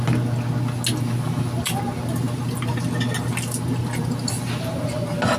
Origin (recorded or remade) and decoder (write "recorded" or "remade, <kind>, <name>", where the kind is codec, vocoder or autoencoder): recorded